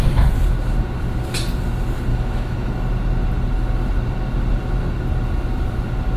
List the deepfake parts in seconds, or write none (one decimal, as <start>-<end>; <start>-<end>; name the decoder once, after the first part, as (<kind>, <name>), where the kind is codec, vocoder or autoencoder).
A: 2.1-2.7 (autoencoder, DAC-VAE)